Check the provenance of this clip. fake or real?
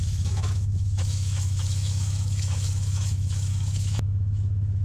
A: fake